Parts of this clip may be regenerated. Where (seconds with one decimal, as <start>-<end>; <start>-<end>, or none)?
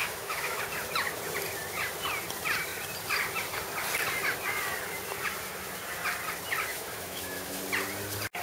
0.0-0.6; 6.7-7.6